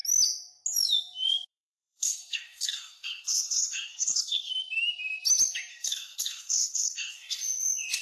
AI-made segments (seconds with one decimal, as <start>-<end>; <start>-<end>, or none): 1.5-4.5; 5.7-7.4